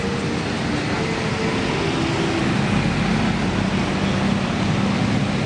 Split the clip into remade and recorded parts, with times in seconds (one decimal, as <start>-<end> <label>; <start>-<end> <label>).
0.0-5.5 recorded